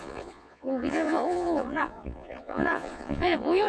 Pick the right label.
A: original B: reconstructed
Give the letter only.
B